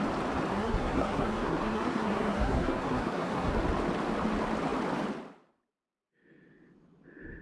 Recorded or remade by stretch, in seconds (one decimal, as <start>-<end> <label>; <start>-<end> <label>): 0.0-0.5 recorded; 0.5-3.6 remade; 3.6-7.4 recorded